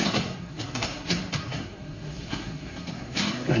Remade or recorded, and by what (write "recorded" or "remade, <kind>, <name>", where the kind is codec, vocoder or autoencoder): remade, codec, SNAC